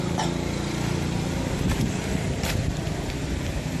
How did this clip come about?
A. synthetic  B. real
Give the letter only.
A